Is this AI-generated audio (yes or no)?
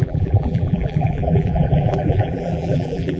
yes